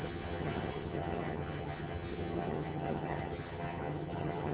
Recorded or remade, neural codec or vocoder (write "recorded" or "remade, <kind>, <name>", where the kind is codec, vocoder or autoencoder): remade, vocoder, HiFi-GAN